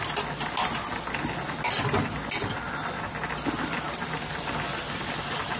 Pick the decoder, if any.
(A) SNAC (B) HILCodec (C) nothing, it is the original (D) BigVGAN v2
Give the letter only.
C